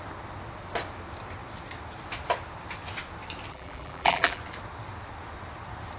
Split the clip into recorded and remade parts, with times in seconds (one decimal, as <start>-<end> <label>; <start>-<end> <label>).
0.0-3.5 recorded; 3.5-4.4 remade; 4.4-6.0 recorded